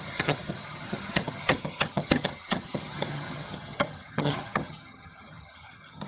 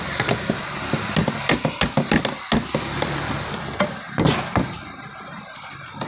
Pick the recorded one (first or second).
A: second